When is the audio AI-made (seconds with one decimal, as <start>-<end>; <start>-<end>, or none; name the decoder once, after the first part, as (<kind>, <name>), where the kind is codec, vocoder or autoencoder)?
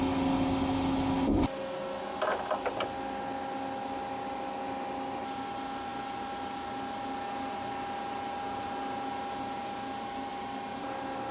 none